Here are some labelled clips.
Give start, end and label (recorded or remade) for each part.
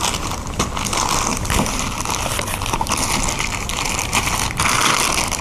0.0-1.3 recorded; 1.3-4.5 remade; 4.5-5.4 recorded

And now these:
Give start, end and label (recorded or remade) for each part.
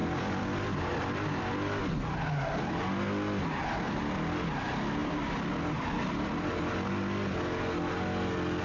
0.0-1.8 remade; 1.8-5.0 recorded; 5.0-6.6 remade; 6.6-8.6 recorded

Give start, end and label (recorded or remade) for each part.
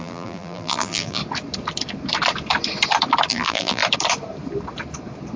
0.0-1.2 remade; 1.2-3.3 recorded; 3.3-3.8 remade; 3.8-5.4 recorded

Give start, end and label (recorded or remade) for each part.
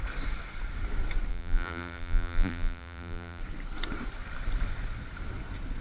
0.0-1.3 recorded; 1.3-3.4 remade; 3.4-5.8 recorded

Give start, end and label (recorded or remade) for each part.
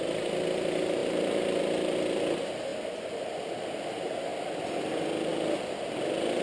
0.0-6.4 recorded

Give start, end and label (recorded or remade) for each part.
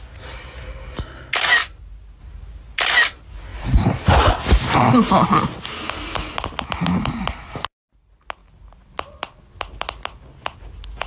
0.0-3.5 recorded; 3.5-4.1 remade; 4.1-11.1 recorded